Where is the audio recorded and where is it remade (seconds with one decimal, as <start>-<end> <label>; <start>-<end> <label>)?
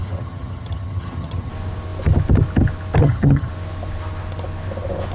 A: 0.0-1.5 remade; 1.5-3.0 recorded; 3.0-3.5 remade; 3.5-5.1 recorded